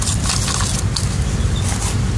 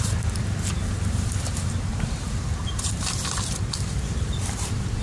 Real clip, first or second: first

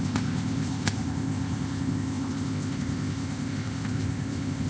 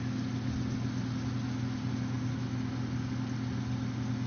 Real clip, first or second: second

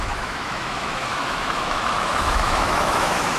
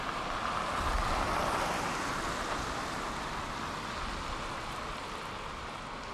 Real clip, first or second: second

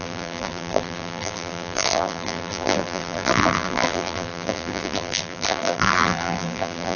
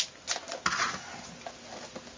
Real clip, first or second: second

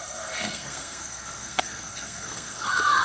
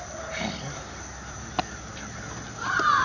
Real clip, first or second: second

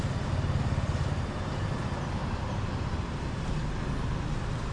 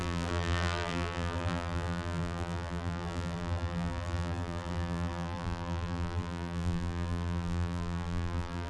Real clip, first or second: first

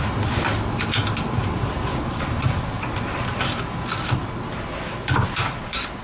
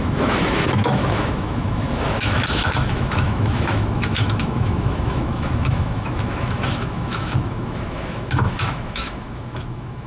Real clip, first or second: first